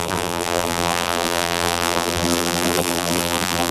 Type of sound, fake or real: fake